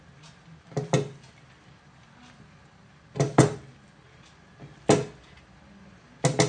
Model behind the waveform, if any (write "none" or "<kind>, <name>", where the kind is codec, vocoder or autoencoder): none